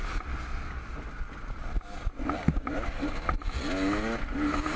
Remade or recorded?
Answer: recorded